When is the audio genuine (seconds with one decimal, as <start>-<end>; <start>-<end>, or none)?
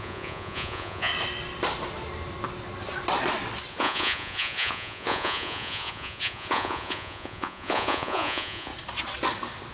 1.1-3.7; 8.7-9.7